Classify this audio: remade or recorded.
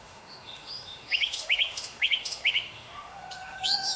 remade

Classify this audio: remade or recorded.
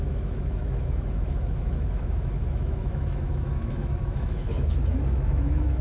remade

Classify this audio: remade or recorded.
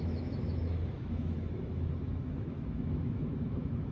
remade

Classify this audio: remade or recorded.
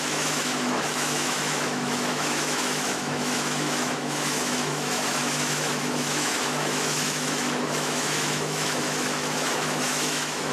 remade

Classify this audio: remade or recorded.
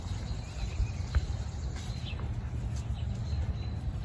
recorded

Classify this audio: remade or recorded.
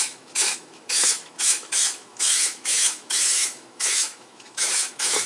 remade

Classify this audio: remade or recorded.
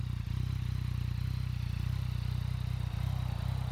recorded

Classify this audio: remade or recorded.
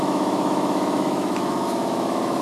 remade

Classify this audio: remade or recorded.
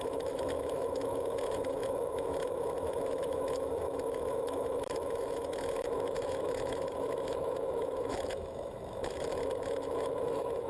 remade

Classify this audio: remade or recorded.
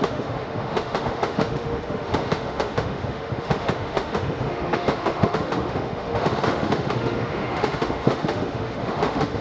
remade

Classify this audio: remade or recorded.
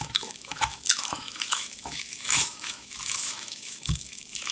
remade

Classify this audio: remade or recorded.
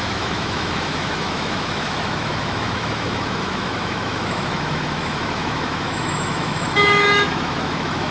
remade